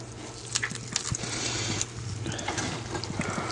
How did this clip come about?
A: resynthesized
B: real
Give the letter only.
B